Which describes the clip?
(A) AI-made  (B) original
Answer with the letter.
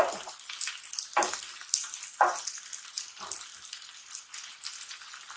B